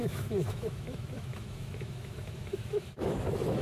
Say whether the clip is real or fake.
fake